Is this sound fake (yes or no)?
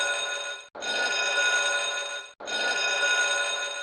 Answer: no